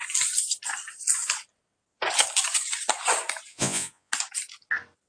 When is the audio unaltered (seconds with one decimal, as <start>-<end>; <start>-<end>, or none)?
0.0-3.5; 4.1-5.1